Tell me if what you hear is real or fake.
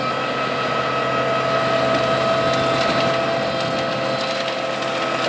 real